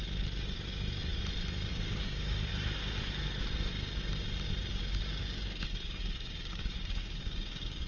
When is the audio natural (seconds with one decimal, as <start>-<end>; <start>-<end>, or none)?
0.0-1.7; 2.5-4.7